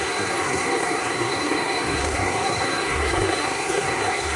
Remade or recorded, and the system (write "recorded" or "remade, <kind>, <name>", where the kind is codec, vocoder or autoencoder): remade, codec, SNAC